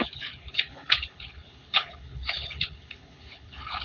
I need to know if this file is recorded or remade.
remade